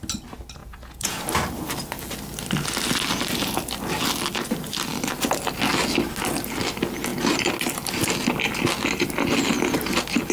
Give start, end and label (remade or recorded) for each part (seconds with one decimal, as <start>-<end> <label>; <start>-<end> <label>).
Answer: 0.0-0.6 recorded; 0.6-1.2 remade; 1.2-10.3 recorded